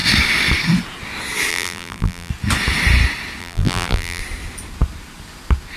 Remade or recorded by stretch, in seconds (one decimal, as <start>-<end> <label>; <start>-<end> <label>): 0.0-1.5 recorded; 1.5-2.3 remade; 2.3-3.4 recorded; 3.4-4.2 remade; 4.2-5.8 recorded